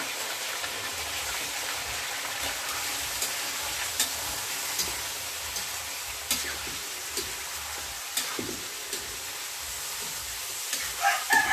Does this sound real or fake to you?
real